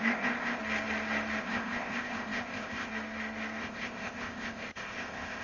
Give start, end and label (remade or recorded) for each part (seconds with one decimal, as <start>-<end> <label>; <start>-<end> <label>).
0.0-0.6 remade; 0.6-1.4 recorded; 1.4-2.9 remade; 2.9-3.6 recorded; 3.6-5.4 remade